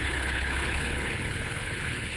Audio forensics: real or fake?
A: fake